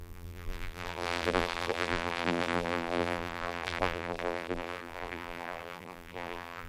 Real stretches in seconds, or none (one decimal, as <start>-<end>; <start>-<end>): none